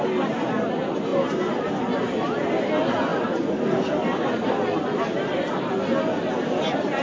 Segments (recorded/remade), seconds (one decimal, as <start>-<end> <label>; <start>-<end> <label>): 0.0-7.0 recorded